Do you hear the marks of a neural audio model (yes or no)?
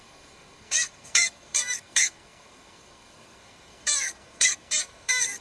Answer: yes